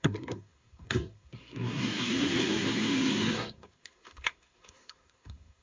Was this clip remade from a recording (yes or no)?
yes